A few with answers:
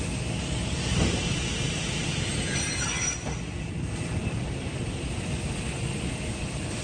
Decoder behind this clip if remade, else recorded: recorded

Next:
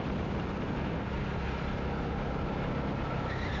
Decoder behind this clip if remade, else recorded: recorded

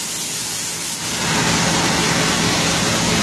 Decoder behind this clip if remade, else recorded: recorded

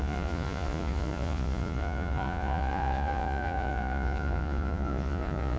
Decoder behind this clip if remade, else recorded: remade, vocoder, Vocos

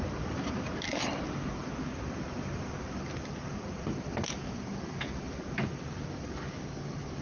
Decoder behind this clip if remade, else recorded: recorded